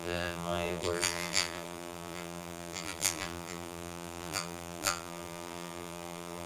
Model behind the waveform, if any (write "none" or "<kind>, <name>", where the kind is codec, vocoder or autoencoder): vocoder, BigVGAN v2